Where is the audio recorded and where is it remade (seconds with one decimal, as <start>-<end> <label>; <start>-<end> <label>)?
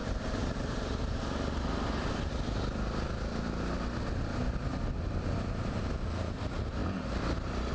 0.0-1.2 remade; 1.2-4.7 recorded; 4.7-5.9 remade; 5.9-7.7 recorded